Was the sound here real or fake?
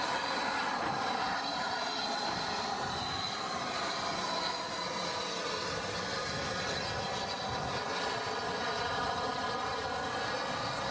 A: real